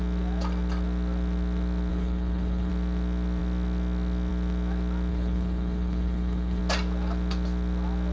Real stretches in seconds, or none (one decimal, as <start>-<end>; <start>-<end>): 0.0-1.9; 2.7-5.1; 6.6-8.1